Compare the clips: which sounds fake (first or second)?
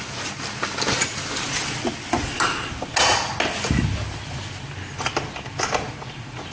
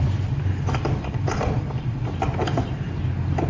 second